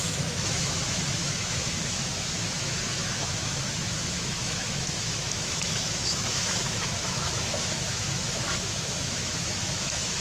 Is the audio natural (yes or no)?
no